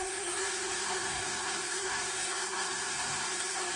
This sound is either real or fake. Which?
fake